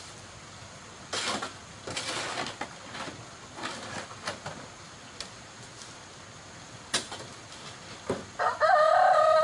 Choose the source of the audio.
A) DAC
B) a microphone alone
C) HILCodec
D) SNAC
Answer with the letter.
B